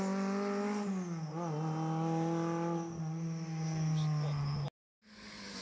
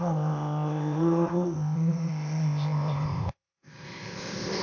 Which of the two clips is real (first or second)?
first